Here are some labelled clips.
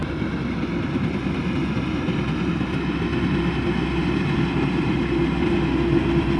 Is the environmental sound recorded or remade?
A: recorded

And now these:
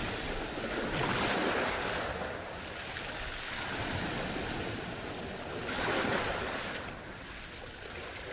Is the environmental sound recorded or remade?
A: recorded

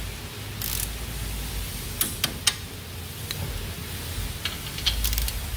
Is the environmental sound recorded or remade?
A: recorded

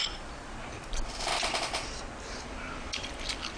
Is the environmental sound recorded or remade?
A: recorded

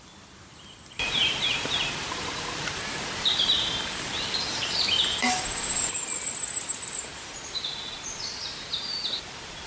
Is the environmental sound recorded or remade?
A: remade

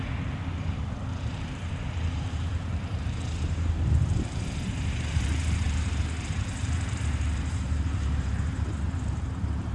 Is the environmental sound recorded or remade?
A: remade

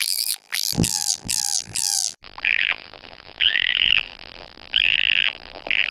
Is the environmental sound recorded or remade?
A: remade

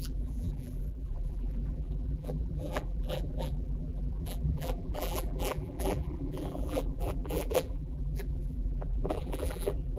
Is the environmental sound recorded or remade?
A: remade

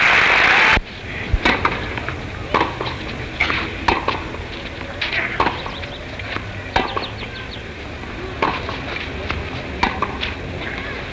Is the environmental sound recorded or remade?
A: recorded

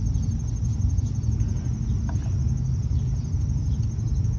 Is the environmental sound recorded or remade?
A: recorded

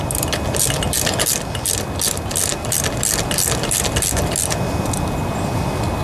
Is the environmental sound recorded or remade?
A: recorded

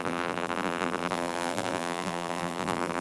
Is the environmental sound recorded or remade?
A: remade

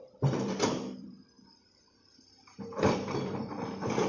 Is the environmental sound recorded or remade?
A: remade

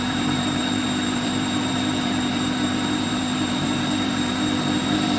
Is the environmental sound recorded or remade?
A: remade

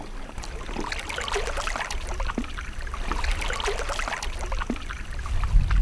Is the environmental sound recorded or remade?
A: recorded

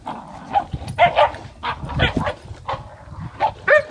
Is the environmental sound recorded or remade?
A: recorded